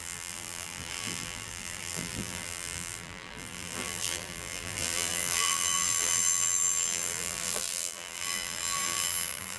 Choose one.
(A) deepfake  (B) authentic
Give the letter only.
A